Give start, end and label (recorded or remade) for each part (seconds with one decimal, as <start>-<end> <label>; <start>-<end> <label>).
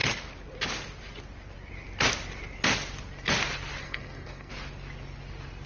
0.0-3.8 recorded; 3.8-4.5 remade; 4.5-5.7 recorded